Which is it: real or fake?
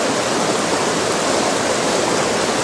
real